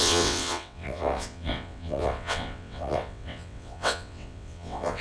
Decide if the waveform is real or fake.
fake